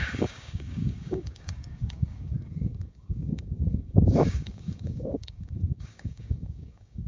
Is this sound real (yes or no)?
no